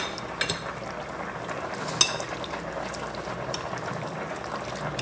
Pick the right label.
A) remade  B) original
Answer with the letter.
B